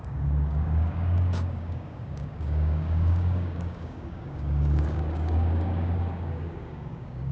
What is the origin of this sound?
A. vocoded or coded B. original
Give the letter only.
A